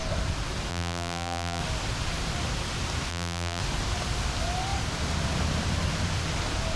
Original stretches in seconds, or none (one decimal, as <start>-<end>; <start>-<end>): 0.0-0.7; 1.6-3.1; 3.6-6.8